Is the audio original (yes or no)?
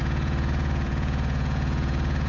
no